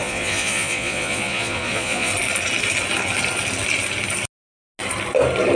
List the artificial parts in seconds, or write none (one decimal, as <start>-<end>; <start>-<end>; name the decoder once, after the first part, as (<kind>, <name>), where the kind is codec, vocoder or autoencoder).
0.0-2.1 (vocoder, Vocos)